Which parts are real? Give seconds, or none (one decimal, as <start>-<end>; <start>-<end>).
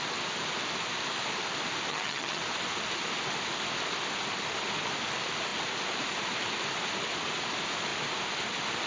0.0-1.9; 2.4-8.9